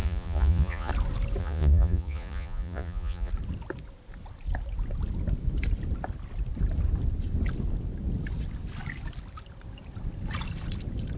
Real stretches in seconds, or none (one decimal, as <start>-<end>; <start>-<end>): 0.9-1.4; 3.3-11.2